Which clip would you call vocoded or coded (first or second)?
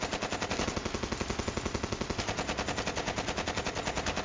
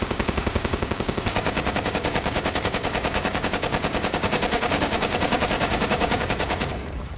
second